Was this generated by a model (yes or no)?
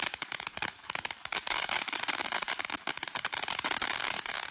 yes